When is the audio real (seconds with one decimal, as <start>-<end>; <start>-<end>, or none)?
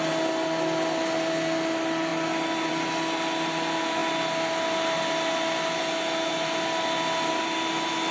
0.0-8.1